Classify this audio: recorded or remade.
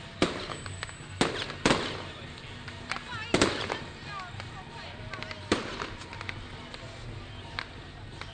recorded